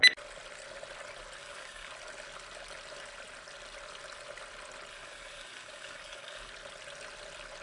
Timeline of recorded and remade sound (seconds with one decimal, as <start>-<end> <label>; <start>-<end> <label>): 0.0-1.4 recorded; 1.4-1.9 remade; 1.9-4.9 recorded; 4.9-6.5 remade; 6.5-7.6 recorded